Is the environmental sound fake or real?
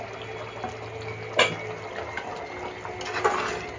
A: real